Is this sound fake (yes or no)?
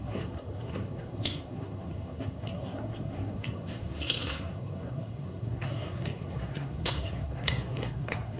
yes